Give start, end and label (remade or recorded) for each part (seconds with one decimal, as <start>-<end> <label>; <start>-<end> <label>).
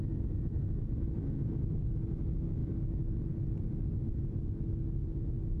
0.0-5.6 recorded